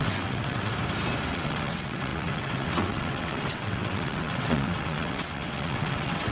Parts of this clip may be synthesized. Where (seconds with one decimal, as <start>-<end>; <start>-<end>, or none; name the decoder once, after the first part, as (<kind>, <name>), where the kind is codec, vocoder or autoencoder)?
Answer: 0.0-0.7 (vocoder, WaveNeXt); 1.3-6.3